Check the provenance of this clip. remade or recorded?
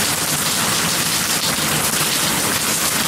recorded